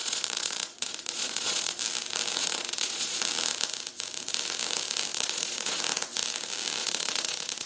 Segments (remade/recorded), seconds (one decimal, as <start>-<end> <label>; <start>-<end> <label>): 0.0-1.8 remade; 1.8-2.4 recorded; 2.4-3.2 remade; 3.2-5.1 recorded; 5.1-5.8 remade; 5.8-6.8 recorded; 6.8-7.7 remade